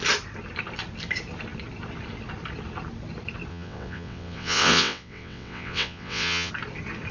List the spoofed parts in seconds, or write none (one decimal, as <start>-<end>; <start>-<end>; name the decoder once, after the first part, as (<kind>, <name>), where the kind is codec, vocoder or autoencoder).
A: 3.5-6.5 (vocoder, WaveNeXt)